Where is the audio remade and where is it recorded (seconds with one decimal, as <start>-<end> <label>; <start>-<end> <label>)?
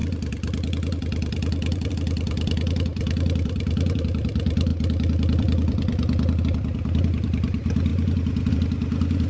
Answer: 0.0-7.9 remade; 7.9-8.5 recorded; 8.5-9.3 remade